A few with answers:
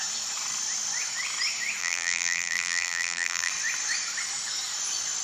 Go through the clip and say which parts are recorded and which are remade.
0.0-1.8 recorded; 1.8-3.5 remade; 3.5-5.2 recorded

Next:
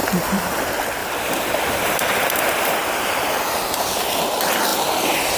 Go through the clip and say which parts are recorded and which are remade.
0.0-0.6 remade; 0.6-1.0 recorded; 1.0-4.2 remade; 4.2-5.4 recorded

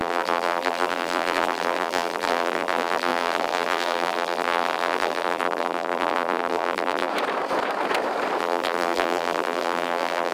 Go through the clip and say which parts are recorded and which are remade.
0.0-7.1 remade; 7.1-8.4 recorded; 8.4-10.3 remade